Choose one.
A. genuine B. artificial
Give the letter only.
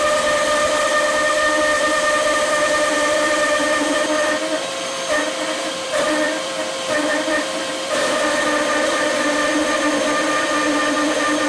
B